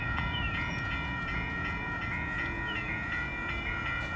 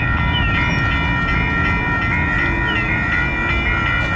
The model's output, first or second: first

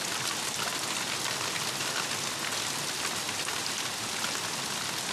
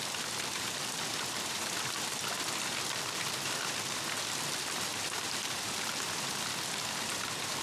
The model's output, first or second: second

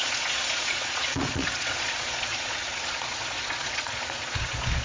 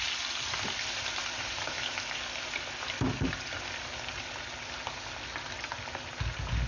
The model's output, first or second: first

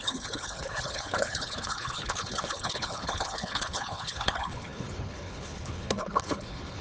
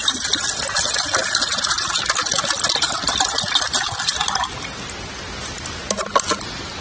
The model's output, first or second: first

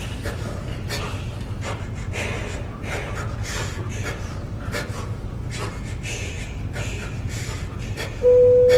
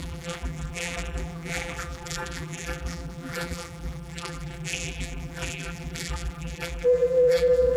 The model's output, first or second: second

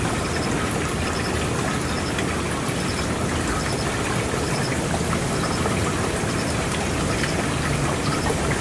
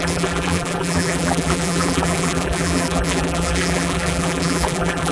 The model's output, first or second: second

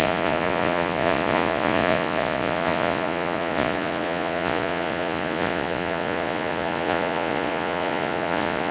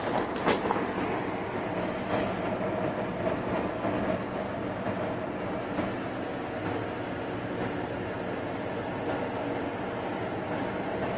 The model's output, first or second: first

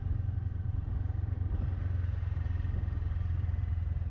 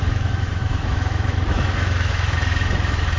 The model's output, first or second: second